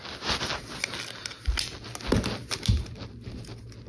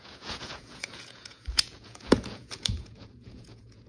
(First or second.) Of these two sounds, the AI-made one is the second